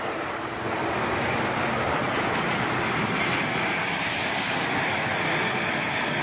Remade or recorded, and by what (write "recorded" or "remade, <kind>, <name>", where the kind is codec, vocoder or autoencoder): recorded